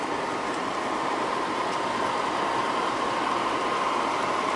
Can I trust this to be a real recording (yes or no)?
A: yes